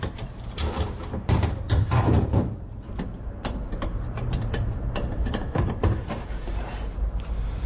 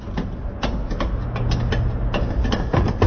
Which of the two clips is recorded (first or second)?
second